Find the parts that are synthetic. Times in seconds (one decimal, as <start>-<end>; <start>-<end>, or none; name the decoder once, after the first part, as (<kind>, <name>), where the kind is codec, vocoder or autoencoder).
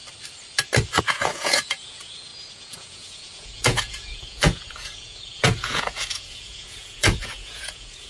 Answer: 1.0-8.1 (vocoder, Vocos)